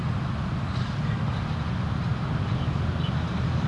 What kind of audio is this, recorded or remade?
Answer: recorded